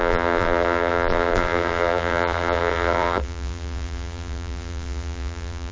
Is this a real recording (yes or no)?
no